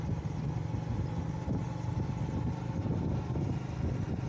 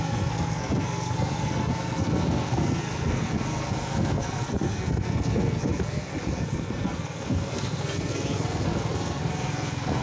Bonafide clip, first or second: first